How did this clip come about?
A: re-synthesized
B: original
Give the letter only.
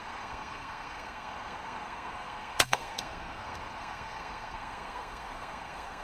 A